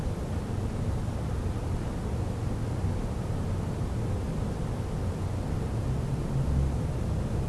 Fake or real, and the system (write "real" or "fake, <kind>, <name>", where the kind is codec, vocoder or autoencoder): real